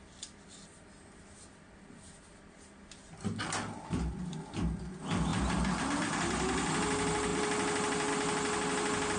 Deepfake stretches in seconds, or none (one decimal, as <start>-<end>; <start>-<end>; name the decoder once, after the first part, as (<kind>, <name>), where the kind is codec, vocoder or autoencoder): none